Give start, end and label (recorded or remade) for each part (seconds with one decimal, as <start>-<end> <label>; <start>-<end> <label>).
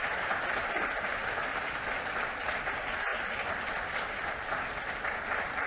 0.0-5.7 recorded